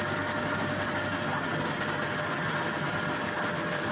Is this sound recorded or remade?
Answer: recorded